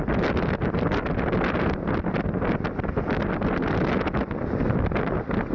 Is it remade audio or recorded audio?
recorded